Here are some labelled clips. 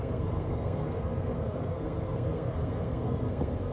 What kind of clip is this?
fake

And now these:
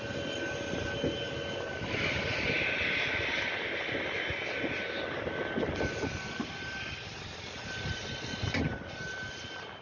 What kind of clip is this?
real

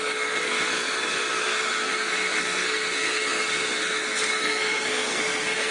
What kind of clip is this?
fake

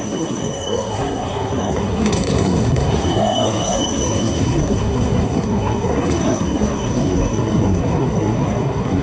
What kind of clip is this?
fake